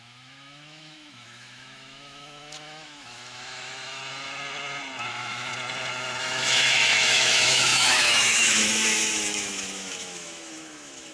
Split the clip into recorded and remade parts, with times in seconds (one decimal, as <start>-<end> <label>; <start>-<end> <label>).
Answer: 0.0-4.0 remade; 4.0-5.1 recorded; 5.1-5.5 remade; 5.5-6.2 recorded; 6.2-11.1 remade